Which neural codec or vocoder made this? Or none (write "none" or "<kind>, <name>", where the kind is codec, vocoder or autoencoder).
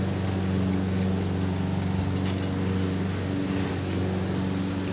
none